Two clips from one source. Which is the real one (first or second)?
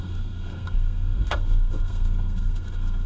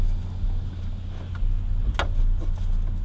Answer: second